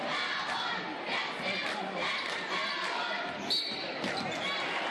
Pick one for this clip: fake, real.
real